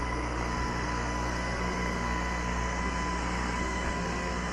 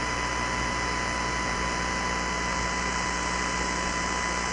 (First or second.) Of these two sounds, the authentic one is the second